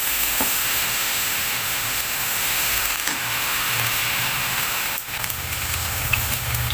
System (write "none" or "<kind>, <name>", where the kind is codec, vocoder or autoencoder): autoencoder, DAC-VAE